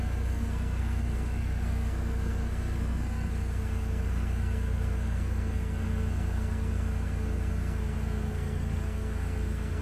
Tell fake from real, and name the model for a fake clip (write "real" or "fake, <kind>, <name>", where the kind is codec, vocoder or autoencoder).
fake, codec, SNAC